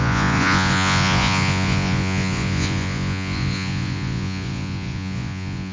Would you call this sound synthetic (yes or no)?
yes